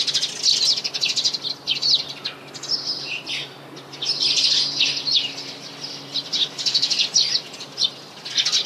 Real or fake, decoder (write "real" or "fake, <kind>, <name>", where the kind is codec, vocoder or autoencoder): real